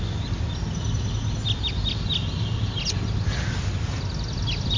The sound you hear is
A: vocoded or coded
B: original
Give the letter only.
B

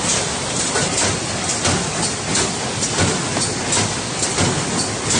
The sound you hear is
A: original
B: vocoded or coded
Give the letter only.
A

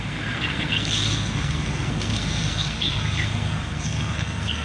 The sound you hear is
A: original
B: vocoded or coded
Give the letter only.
B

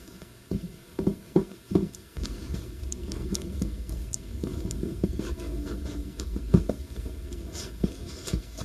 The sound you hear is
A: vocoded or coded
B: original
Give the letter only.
A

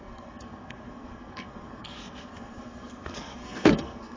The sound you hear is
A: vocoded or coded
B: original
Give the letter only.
A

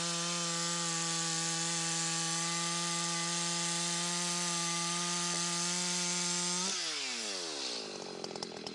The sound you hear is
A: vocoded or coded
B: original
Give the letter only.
B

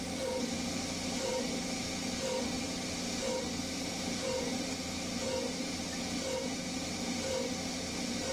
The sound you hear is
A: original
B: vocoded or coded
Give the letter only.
A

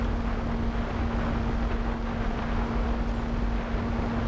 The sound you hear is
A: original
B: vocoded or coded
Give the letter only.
A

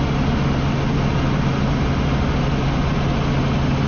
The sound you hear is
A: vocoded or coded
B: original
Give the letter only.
B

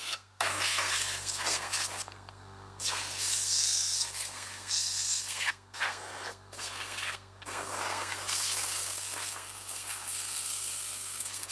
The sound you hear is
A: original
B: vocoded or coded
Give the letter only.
B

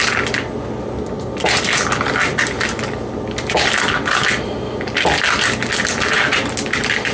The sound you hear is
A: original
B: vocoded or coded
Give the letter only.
A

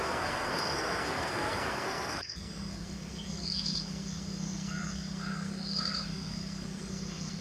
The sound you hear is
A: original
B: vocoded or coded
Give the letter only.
B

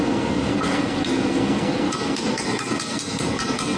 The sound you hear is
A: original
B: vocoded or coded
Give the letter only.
B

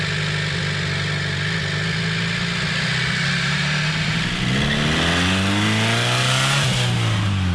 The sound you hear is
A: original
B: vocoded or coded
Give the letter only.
A